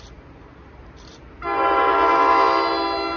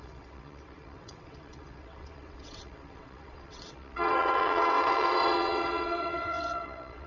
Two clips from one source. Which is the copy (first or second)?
second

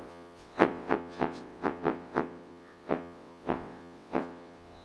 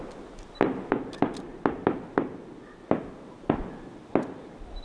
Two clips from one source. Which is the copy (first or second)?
first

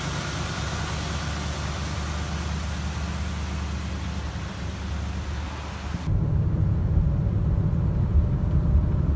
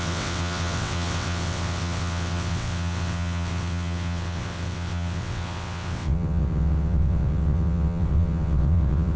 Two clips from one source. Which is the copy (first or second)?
second